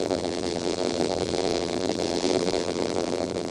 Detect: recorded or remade remade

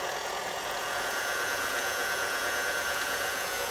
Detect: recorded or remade remade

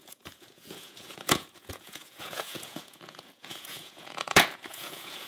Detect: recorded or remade remade